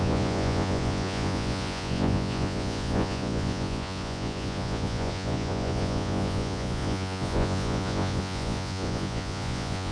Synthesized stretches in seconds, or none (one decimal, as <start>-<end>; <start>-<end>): 0.0-9.9